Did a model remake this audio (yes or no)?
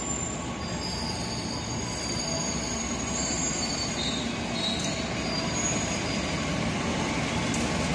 no